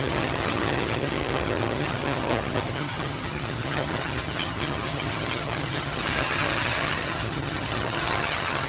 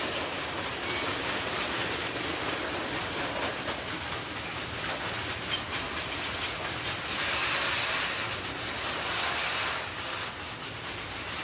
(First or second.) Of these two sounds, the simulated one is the first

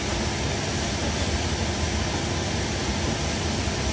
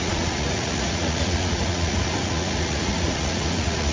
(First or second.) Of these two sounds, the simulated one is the second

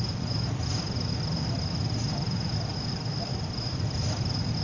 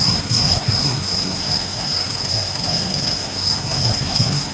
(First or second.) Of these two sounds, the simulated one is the second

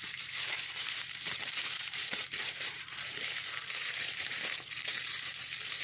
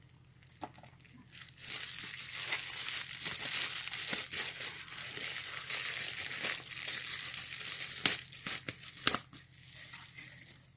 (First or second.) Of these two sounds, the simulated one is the first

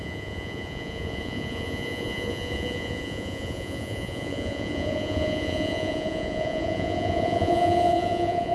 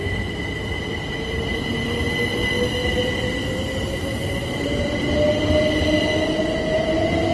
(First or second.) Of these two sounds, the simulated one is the first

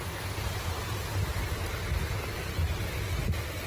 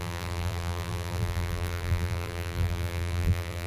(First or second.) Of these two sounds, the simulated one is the second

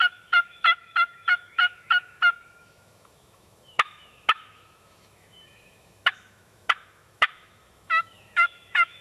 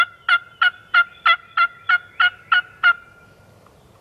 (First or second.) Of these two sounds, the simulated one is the first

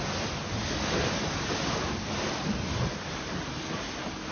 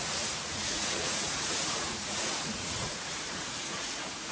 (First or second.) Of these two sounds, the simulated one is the second